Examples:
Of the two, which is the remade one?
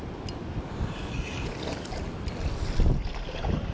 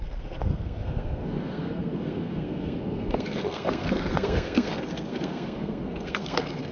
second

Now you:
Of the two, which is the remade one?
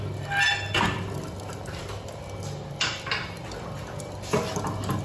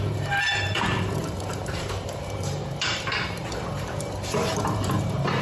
second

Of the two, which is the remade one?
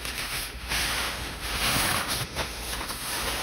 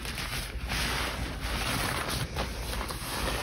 first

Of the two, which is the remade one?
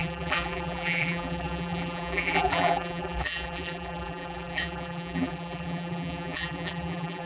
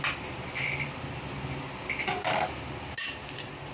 first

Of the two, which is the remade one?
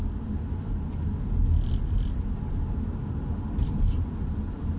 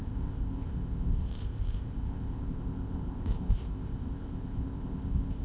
second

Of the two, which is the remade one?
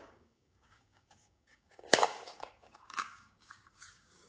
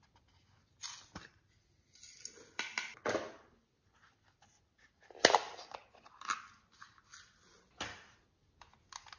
first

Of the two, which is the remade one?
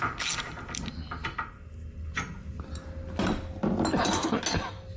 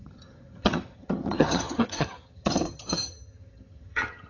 second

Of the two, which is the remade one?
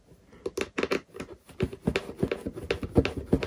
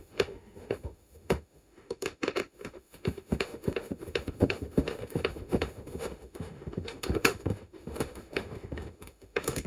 second